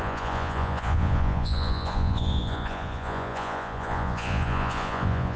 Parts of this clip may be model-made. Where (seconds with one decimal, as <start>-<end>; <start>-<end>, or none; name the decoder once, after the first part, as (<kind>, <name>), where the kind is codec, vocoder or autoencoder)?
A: 0.0-5.4 (vocoder, Vocos)